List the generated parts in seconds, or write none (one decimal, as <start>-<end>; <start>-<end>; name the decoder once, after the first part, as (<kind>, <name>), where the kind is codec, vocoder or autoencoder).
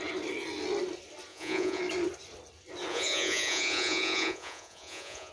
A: 1.3-1.8 (vocoder, Vocos); 2.9-5.3